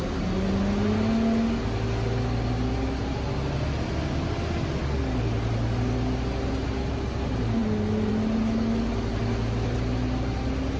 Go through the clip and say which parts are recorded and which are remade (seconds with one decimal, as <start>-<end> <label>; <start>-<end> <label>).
0.0-10.8 recorded